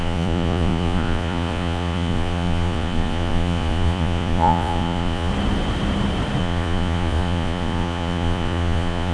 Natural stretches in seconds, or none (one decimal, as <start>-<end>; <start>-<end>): 5.3-6.4